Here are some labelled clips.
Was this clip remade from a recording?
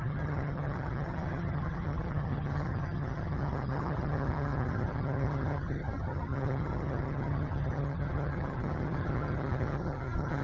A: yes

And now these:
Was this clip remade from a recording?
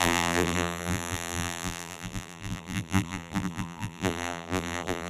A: yes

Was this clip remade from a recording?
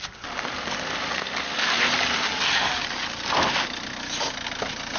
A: no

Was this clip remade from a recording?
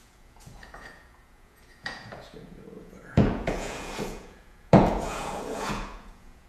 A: yes